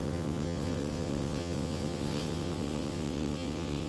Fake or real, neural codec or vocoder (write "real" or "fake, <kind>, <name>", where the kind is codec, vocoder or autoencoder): fake, vocoder, WaveNeXt